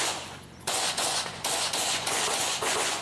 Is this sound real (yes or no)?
no